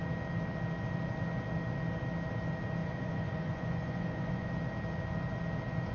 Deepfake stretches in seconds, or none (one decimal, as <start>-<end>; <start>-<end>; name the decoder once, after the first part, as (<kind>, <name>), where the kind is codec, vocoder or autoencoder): 2.8-4.5 (vocoder, Vocos)